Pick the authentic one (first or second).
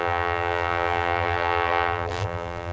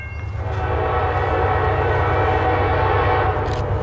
second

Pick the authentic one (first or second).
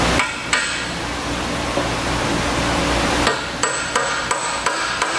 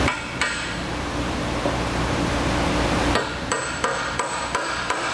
first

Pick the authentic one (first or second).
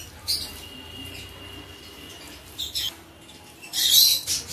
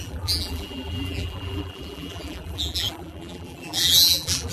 first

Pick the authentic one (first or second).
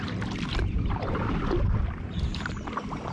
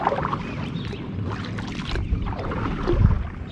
second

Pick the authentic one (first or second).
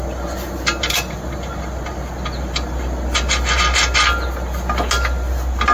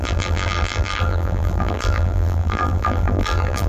first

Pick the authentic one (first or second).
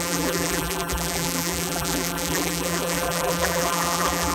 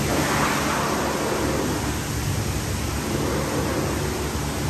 second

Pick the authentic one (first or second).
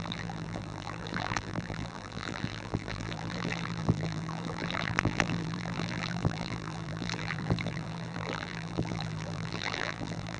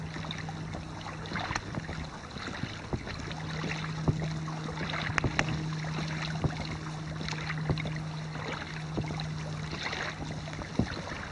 second